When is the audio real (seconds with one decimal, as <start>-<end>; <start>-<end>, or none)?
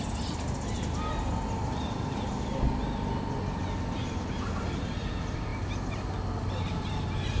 0.0-7.4